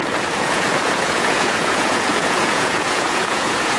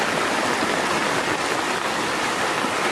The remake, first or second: first